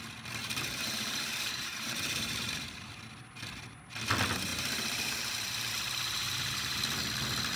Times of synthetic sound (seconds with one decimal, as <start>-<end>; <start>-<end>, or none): 0.4-2.9; 4.5-5.7; 6.2-6.8